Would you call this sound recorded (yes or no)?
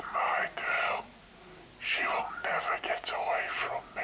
yes